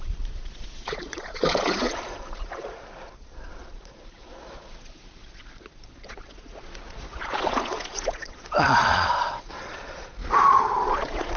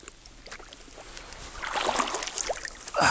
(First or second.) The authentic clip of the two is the second